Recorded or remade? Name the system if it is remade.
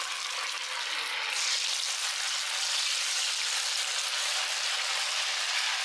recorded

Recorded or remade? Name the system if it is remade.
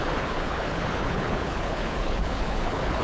remade, codec, HILCodec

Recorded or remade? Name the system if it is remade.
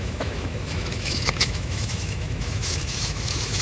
remade, autoencoder, DAC-VAE